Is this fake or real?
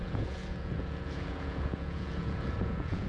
fake